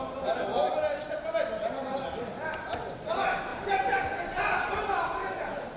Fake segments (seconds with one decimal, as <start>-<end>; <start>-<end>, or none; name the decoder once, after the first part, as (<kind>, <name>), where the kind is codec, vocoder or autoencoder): none